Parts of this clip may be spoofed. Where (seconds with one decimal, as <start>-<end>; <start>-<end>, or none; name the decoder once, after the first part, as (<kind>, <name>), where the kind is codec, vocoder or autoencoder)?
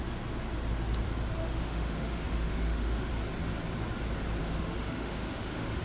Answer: 1.4-3.1 (autoencoder, DAC-VAE); 4.4-5.8